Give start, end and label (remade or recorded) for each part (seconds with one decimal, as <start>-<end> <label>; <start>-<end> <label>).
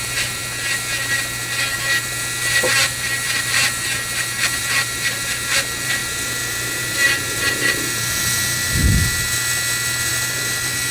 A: 0.0-0.4 remade; 0.4-4.6 recorded; 4.6-8.8 remade; 8.8-10.1 recorded; 10.1-10.9 remade